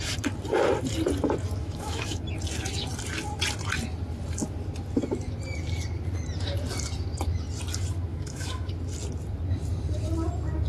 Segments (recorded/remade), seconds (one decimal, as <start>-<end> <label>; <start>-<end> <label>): 0.0-1.6 recorded; 1.6-2.2 remade; 2.2-8.1 recorded; 8.1-8.7 remade; 8.7-10.7 recorded